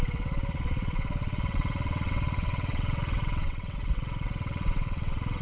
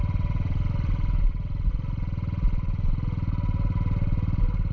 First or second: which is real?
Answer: second